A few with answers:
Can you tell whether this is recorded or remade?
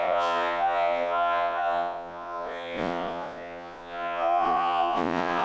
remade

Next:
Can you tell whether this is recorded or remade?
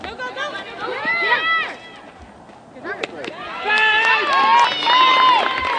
recorded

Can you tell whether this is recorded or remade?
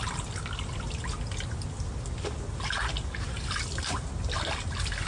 recorded